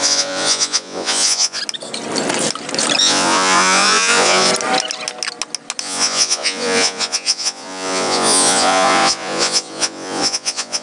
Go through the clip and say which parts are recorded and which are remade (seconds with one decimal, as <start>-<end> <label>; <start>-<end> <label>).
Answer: 0.0-1.6 remade; 1.6-3.0 recorded; 3.0-4.5 remade; 4.5-5.8 recorded; 5.8-10.8 remade